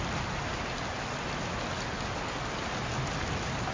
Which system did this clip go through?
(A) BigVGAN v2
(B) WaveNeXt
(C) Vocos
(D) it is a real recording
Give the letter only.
D